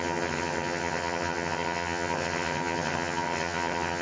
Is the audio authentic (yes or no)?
no